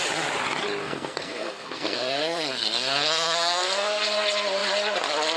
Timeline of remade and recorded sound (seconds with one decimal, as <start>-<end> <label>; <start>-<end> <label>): 0.0-0.8 recorded; 0.8-4.0 remade; 4.0-5.4 recorded